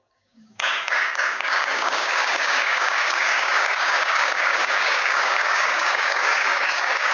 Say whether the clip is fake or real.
fake